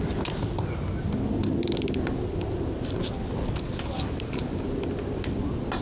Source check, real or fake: real